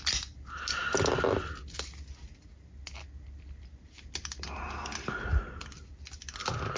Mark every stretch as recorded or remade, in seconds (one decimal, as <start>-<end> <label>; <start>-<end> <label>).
0.0-6.8 recorded